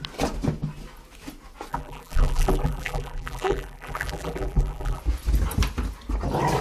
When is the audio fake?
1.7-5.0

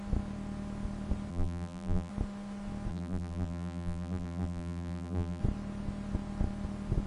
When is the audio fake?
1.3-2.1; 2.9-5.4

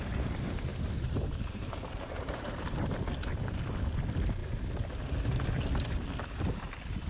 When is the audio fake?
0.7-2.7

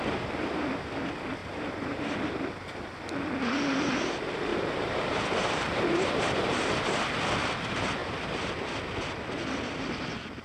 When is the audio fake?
1.4-2.5; 4.5-6.8

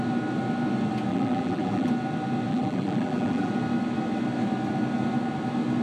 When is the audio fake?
1.1-1.9; 2.5-3.5

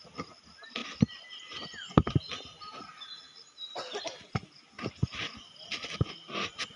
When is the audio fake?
none